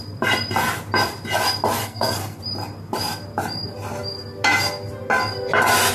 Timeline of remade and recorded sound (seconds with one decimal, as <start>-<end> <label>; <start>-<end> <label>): 0.0-1.8 recorded; 1.8-2.4 remade; 2.4-5.9 recorded